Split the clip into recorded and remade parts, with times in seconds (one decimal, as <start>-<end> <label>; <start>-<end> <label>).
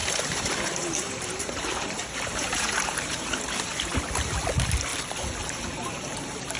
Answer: 0.0-4.0 remade; 4.0-6.6 recorded